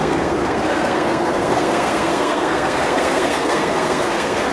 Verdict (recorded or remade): remade